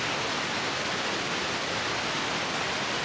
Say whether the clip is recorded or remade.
recorded